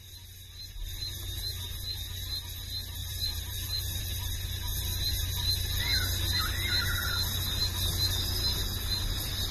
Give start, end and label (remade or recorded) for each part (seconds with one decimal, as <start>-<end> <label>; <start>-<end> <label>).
0.0-3.0 recorded; 3.0-4.3 remade; 4.3-9.5 recorded